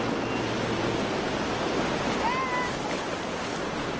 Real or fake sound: real